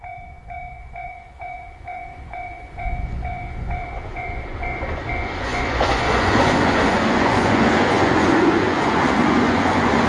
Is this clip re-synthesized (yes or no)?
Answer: yes